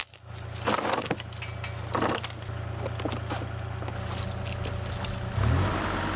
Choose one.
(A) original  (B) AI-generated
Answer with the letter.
A